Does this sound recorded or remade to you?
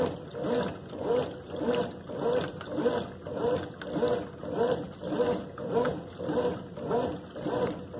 recorded